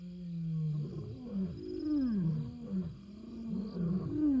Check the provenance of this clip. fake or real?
real